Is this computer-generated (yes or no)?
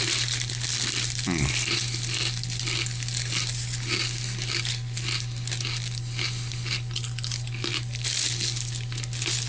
no